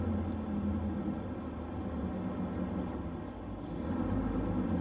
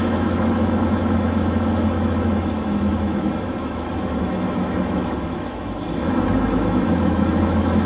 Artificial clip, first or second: second